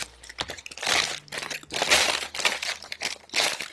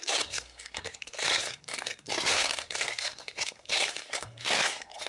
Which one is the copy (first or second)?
second